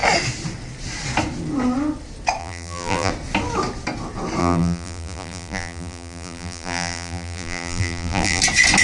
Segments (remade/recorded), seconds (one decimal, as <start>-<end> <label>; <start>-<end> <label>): 0.0-2.4 recorded; 2.4-3.1 remade; 3.1-4.4 recorded; 4.4-8.4 remade; 8.4-8.8 recorded